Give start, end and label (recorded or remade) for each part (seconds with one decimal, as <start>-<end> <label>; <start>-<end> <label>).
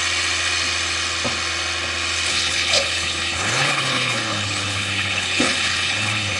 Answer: 0.0-2.3 recorded; 2.3-6.4 remade